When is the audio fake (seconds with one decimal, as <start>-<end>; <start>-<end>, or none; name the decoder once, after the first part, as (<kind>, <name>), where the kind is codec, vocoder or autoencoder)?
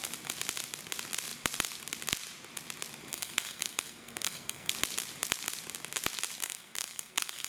3.1-4.7 (codec, SNAC); 6.4-7.5